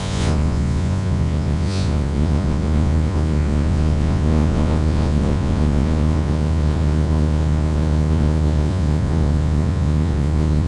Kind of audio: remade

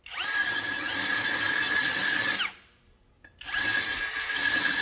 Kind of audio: recorded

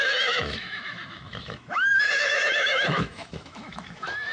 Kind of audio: remade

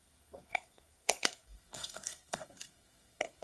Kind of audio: remade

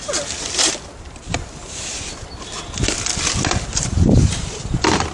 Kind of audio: remade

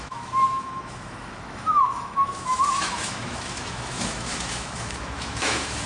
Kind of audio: remade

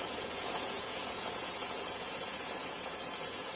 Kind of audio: remade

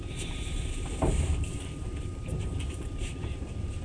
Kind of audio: remade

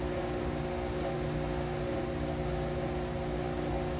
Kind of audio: recorded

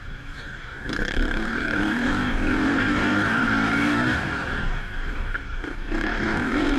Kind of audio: remade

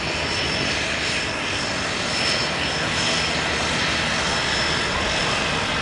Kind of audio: recorded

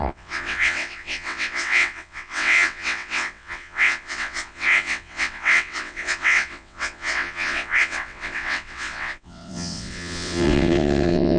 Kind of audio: remade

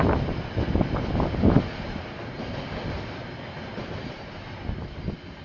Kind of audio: recorded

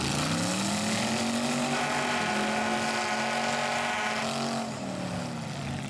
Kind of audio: recorded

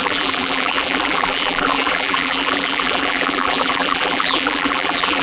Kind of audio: remade